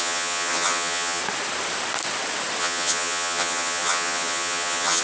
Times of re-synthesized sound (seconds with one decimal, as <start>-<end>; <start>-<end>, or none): 0.0-1.2; 2.6-5.0